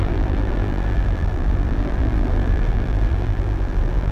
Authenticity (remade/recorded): remade